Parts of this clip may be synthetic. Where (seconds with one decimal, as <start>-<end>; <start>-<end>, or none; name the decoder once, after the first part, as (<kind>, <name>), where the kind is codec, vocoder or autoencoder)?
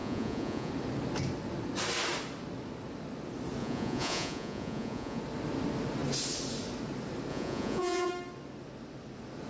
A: 0.0-0.7 (vocoder, Vocos); 3.6-5.2; 7.3-8.1